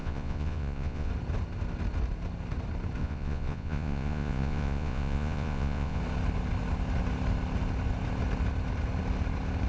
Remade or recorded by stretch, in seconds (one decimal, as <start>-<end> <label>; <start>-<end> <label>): 0.0-1.1 remade; 1.1-3.0 recorded; 3.0-6.0 remade; 6.0-9.7 recorded

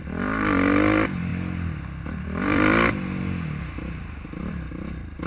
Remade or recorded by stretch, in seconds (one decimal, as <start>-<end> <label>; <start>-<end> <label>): 0.0-5.3 recorded

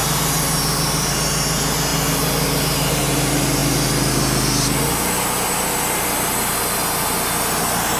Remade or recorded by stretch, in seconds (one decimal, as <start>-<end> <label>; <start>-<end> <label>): 0.0-8.0 recorded

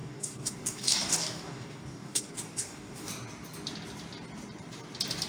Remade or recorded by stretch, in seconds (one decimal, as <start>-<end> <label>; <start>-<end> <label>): 0.0-3.1 remade; 3.1-5.3 recorded

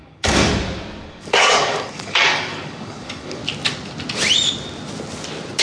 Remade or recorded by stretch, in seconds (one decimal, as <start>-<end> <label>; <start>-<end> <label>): 0.0-0.5 remade; 0.5-1.1 recorded; 1.1-3.4 remade; 3.4-5.6 recorded